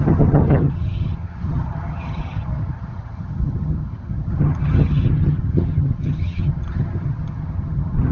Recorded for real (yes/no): no